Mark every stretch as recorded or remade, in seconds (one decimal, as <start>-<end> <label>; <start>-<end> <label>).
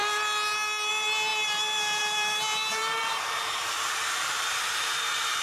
0.0-0.9 recorded; 0.9-5.4 remade